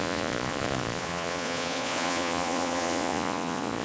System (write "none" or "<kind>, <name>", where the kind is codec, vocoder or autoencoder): vocoder, Vocos